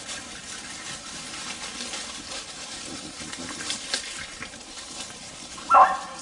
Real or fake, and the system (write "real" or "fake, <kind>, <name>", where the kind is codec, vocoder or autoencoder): real